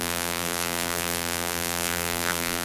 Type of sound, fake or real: fake